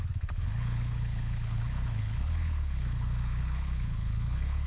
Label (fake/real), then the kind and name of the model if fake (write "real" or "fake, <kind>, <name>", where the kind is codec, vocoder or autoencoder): fake, codec, HILCodec